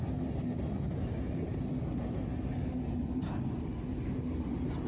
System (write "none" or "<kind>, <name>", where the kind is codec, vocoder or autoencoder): none